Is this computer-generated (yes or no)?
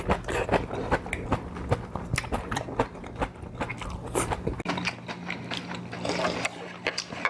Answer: no